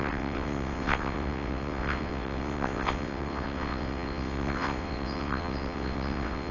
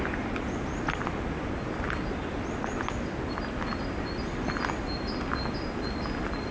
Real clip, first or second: second